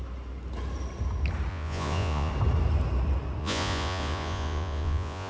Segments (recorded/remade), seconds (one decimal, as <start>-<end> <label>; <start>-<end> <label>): 0.0-1.5 recorded; 1.5-2.3 remade; 2.3-3.4 recorded; 3.4-5.3 remade